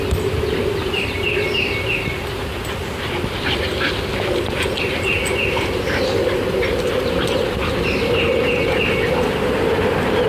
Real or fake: real